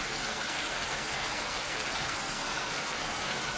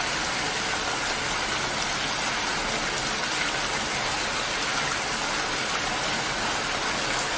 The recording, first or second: second